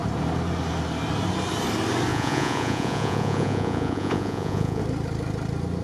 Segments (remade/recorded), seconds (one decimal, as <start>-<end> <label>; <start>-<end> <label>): 0.0-2.1 recorded; 2.1-4.8 remade; 4.8-5.8 recorded